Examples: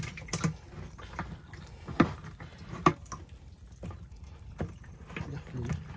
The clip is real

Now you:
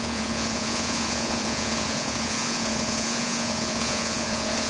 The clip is fake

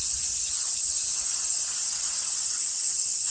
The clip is fake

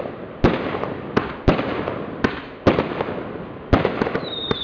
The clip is real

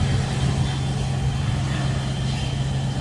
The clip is real